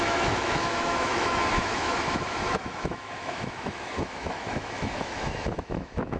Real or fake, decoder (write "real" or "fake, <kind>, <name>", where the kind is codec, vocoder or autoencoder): fake, autoencoder, DAC-VAE